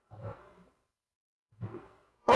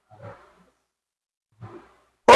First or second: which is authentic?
second